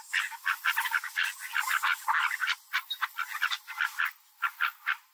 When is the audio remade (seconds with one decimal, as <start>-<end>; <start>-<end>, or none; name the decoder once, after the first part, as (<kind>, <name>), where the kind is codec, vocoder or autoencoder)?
none